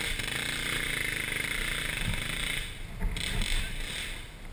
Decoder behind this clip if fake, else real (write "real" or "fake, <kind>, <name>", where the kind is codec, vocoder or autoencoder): real